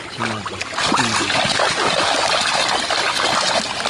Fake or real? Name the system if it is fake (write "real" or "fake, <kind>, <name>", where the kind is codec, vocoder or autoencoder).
real